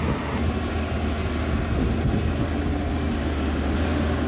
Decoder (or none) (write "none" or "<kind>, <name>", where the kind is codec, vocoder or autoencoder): none